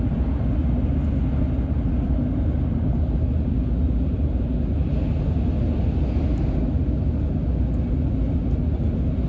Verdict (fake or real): real